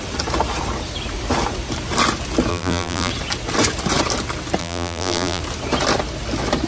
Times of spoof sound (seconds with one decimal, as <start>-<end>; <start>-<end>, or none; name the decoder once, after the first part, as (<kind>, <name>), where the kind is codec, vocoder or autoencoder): 2.5-3.1 (vocoder, BigVGAN v2); 4.6-5.4